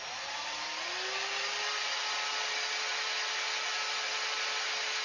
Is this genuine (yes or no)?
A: yes